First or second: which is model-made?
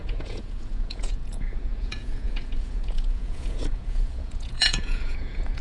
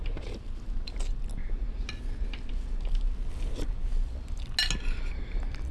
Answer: first